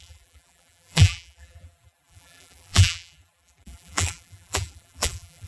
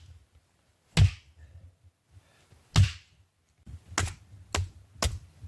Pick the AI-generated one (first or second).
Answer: first